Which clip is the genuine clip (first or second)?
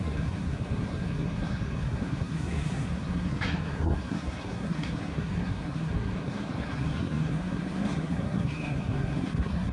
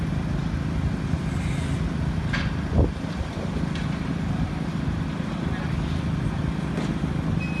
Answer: second